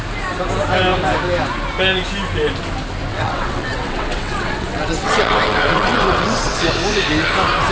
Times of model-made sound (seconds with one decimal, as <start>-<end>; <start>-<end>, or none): 3.1-6.6